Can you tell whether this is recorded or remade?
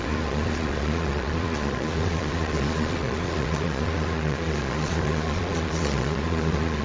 remade